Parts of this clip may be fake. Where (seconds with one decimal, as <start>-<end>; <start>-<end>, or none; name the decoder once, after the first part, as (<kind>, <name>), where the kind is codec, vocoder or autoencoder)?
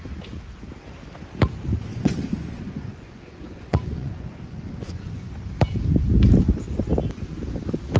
1.9-5.3 (vocoder, Vocos)